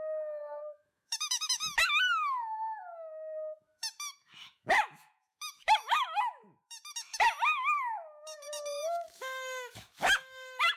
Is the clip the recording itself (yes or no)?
no